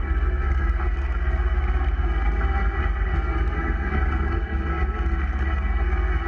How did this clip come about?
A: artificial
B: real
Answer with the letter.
A